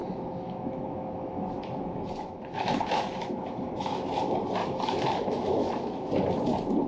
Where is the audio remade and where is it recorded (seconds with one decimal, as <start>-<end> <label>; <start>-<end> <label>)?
0.0-4.1 remade; 4.1-4.6 recorded; 4.6-6.1 remade; 6.1-6.9 recorded

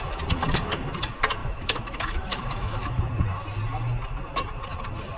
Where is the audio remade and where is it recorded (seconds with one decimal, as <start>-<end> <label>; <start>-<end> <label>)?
0.0-1.4 recorded; 1.4-3.0 remade; 3.0-5.2 recorded

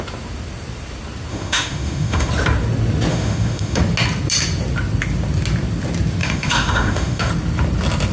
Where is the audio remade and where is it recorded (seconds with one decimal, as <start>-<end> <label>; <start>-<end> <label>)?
0.0-1.3 recorded; 1.3-2.3 remade; 2.3-3.1 recorded; 3.1-3.8 remade; 3.8-6.2 recorded; 6.2-7.3 remade; 7.3-8.1 recorded

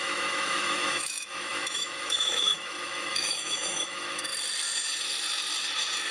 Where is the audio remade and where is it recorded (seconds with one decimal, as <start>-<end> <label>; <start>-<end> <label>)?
0.0-4.3 remade; 4.3-6.1 recorded

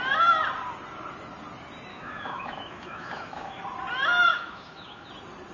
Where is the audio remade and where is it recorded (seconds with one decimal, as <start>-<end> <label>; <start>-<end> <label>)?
0.0-1.9 recorded; 1.9-3.6 remade; 3.6-4.3 recorded; 4.3-5.1 remade; 5.1-5.5 recorded

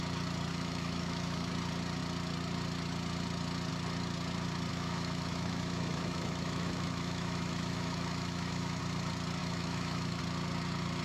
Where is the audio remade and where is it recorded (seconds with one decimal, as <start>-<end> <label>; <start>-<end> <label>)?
0.0-0.5 recorded; 0.5-1.5 remade; 1.5-4.7 recorded; 4.7-8.8 remade; 8.8-9.4 recorded; 9.4-10.2 remade; 10.2-11.0 recorded

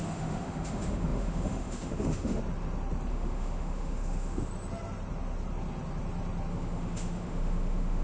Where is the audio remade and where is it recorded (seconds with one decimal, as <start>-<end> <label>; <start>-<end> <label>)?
0.0-2.4 remade; 2.4-3.1 recorded; 3.1-4.5 remade; 4.5-6.5 recorded; 6.5-8.0 remade

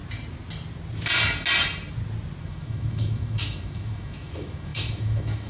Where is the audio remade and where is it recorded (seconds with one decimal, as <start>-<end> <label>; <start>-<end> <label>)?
0.0-2.4 recorded; 2.4-5.5 remade